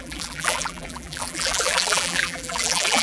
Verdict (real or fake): fake